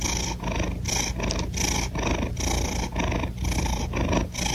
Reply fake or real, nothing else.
real